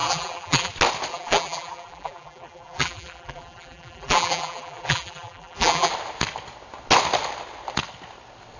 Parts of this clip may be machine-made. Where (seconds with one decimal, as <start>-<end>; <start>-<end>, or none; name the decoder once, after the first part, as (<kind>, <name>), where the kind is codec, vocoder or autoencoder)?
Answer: 0.0-0.7 (vocoder, BigVGAN v2); 1.1-5.9